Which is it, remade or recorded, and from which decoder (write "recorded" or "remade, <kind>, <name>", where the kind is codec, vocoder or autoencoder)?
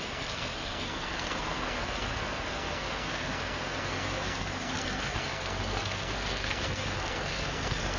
remade, codec, SNAC